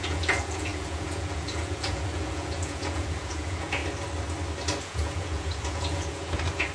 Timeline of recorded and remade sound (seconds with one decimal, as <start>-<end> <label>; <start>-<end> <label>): 0.0-3.8 remade; 3.8-4.8 recorded; 4.8-6.7 remade